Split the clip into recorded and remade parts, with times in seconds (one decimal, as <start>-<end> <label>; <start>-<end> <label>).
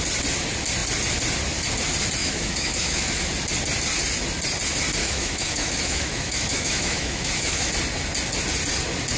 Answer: 0.0-2.2 recorded; 2.2-3.3 remade; 3.3-5.0 recorded; 5.0-7.7 remade; 7.7-9.2 recorded